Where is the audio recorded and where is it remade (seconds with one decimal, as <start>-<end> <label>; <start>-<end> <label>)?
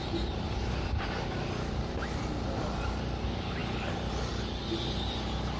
0.0-5.6 recorded